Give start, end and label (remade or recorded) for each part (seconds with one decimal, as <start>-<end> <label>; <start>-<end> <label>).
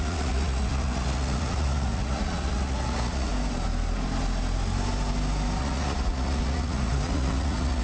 0.0-3.3 remade; 3.3-5.6 recorded; 5.6-7.8 remade